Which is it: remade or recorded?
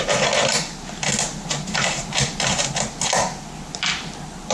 recorded